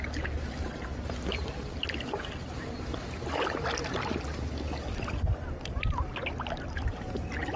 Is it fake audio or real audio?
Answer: real